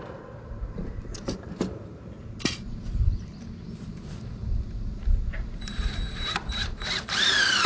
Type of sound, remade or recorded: remade